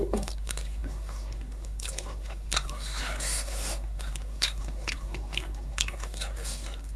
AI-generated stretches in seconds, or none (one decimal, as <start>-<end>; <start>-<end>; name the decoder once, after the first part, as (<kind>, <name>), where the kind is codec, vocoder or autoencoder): 0.0-7.0 (codec, SNAC)